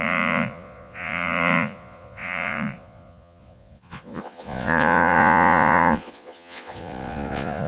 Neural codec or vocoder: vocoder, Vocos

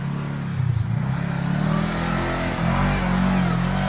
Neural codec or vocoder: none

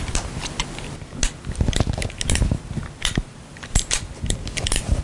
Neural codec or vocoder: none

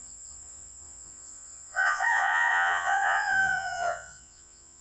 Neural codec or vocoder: vocoder, Vocos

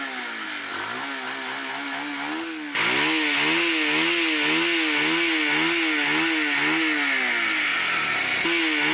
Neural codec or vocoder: none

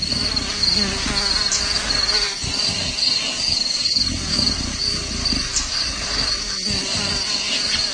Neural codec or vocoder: none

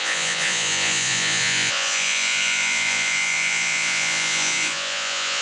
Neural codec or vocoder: vocoder, Vocos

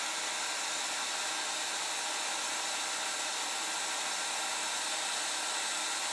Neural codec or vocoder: none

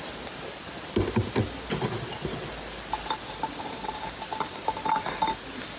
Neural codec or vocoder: none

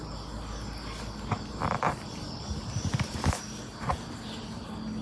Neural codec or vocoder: none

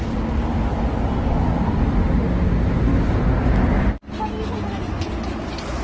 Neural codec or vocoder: none